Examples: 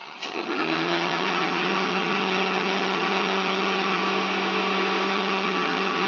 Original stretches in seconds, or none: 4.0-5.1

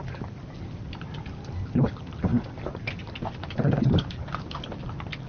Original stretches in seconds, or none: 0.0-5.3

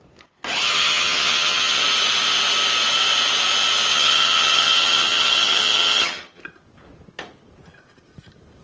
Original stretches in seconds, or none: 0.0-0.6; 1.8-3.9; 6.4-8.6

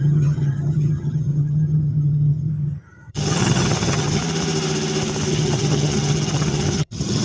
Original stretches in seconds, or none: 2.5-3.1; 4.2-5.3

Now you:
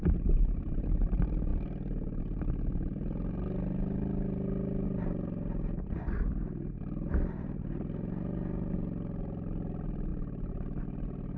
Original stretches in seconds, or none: 0.0-11.4